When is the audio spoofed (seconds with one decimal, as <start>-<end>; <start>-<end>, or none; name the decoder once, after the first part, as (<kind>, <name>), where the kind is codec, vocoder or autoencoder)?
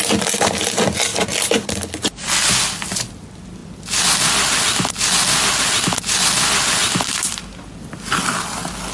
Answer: none